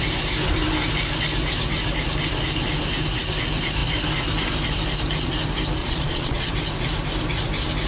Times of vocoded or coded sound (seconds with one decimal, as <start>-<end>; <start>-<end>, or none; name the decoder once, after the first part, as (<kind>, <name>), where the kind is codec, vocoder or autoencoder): 5.8-6.5 (vocoder, Vocos)